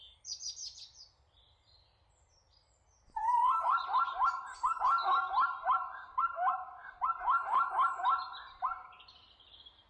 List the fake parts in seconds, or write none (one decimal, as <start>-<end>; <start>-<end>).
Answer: 0.9-3.7